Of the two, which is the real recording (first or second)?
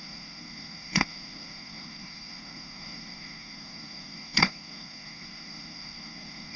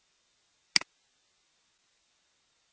second